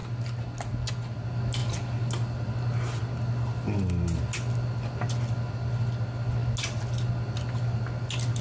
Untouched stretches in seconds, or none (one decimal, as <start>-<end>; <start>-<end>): 0.0-8.4